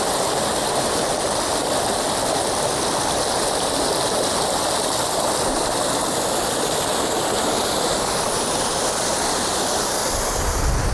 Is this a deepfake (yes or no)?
no